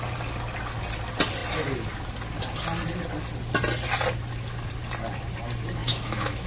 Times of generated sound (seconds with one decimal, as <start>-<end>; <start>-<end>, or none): 5.8-6.5